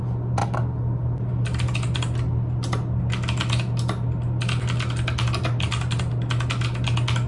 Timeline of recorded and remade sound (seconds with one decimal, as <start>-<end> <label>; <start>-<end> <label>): 0.0-7.3 recorded